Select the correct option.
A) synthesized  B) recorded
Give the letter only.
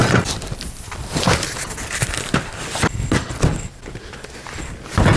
B